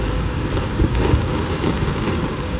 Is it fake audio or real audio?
fake